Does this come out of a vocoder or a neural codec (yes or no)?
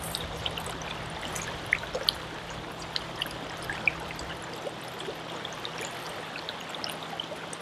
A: no